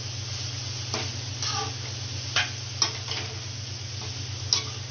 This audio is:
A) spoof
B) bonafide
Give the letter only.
B